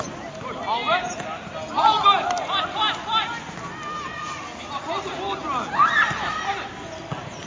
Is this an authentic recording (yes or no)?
yes